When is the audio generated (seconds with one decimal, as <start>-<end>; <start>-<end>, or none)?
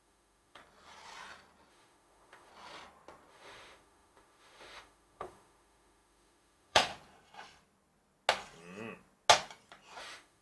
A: 0.0-0.6; 1.7-2.5; 3.3-6.9; 10.0-10.4